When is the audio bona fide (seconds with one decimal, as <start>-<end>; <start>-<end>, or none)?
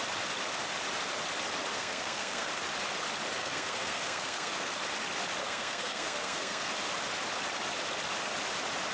0.0-1.7; 2.5-3.4; 4.7-5.4; 6.7-8.9